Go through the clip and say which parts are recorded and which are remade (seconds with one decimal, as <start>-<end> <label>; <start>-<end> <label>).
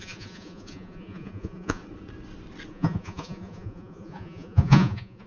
0.0-1.8 remade; 1.8-2.7 recorded; 2.7-5.3 remade